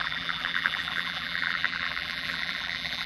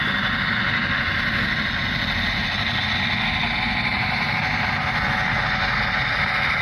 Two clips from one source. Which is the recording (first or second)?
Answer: second